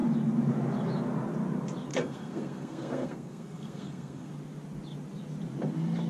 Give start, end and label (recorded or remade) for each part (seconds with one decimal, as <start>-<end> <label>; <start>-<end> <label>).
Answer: 0.0-1.9 recorded; 1.9-4.3 remade; 4.3-6.1 recorded